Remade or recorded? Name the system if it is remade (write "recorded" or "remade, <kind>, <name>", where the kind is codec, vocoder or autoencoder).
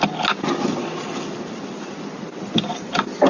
recorded